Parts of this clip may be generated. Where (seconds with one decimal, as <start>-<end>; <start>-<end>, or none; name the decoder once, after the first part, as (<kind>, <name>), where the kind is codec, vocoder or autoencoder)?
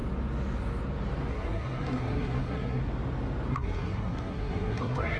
1.3-2.8 (codec, SNAC); 3.5-5.2